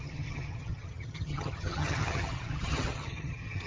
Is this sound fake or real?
fake